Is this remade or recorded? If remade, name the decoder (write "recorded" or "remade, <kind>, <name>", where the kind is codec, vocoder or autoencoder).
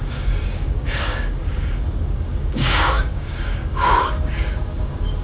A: remade, codec, DAC